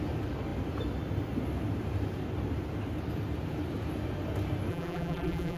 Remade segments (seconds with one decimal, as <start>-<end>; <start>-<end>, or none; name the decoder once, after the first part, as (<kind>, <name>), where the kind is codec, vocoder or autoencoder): 4.7-5.6 (vocoder, BigVGAN v2)